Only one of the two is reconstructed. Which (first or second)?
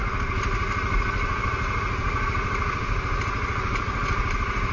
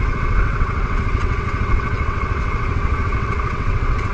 second